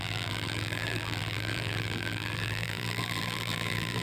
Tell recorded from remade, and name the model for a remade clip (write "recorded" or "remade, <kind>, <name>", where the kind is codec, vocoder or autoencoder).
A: remade, vocoder, BigVGAN v2